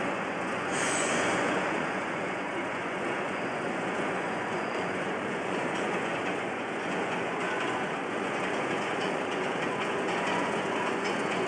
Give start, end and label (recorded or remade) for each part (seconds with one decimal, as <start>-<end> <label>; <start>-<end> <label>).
0.0-11.5 remade